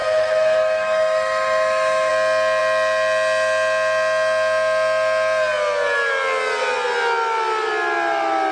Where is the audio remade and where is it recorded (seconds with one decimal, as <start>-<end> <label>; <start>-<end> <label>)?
0.0-2.1 remade; 2.1-8.5 recorded